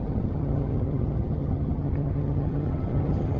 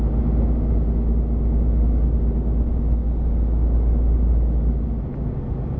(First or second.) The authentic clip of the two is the second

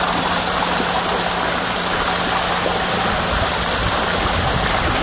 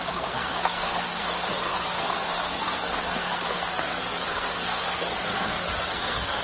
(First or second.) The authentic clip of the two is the first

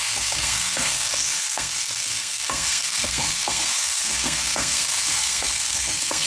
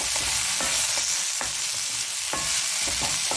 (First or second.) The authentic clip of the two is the second